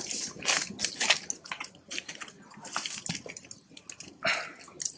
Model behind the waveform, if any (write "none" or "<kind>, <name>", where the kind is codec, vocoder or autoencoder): none